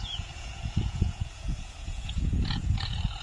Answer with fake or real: fake